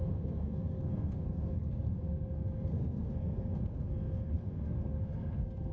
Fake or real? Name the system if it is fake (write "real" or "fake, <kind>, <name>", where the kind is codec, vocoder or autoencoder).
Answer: fake, codec, SNAC